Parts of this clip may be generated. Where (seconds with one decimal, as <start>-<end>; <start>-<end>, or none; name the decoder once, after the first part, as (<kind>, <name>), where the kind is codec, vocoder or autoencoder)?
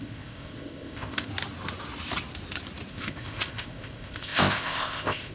0.0-1.3 (codec, ZipCodec); 2.9-5.3